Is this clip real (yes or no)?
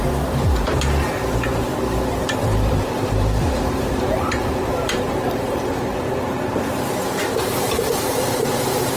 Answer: no